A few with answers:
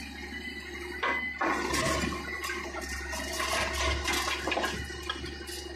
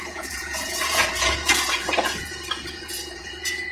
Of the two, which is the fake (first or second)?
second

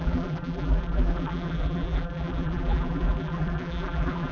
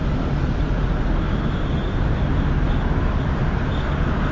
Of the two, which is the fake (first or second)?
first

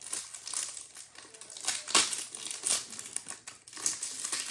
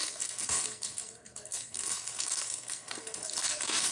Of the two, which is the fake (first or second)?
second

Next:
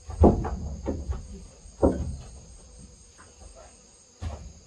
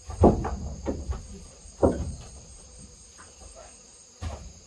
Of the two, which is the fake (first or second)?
second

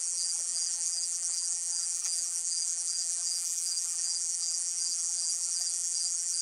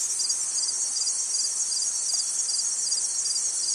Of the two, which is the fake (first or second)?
first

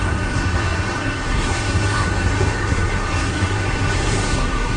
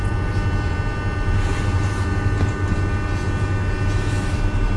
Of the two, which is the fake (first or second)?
first